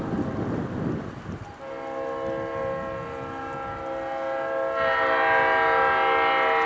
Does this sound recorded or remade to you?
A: recorded